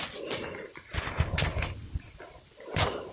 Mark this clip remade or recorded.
recorded